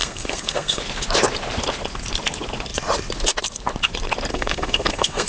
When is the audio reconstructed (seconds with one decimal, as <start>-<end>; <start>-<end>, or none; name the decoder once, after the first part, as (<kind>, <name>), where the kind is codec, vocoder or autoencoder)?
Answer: 0.0-0.8 (codec, SNAC); 4.3-5.3